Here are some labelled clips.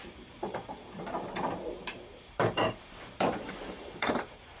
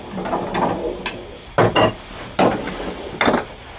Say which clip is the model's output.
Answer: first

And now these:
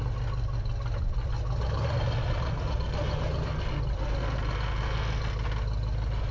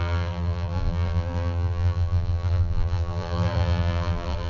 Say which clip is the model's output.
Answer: second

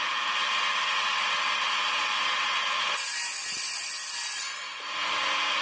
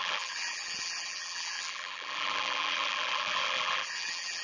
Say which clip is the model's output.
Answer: second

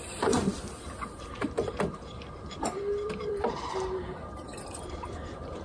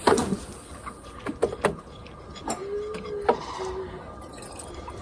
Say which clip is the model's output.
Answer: first